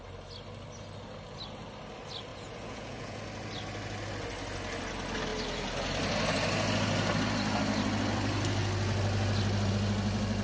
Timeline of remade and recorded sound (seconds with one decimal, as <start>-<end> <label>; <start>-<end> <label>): 0.0-2.3 recorded; 2.3-3.2 remade; 3.2-10.4 recorded